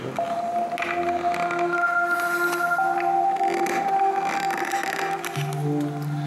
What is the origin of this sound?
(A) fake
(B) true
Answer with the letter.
B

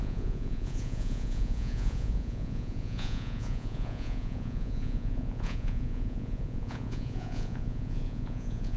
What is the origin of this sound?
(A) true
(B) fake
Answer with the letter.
B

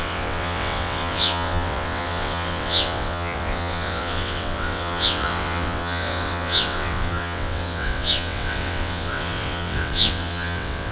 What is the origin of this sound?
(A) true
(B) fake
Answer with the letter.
B